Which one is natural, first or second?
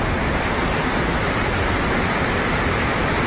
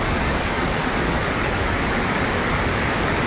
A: first